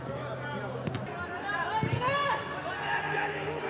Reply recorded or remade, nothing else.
recorded